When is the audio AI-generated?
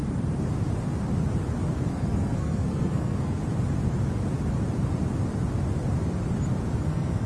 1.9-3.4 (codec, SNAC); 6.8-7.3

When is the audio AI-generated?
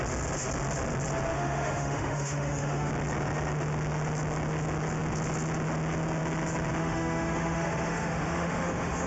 1.3-2.9 (autoencoder, DAC-VAE); 6.8-9.1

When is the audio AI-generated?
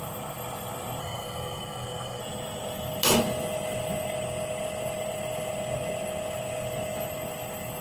1.0-2.2 (codec, SNAC)